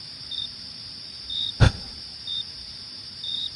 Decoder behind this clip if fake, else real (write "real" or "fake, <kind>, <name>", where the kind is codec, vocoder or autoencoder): fake, vocoder, BigVGAN v2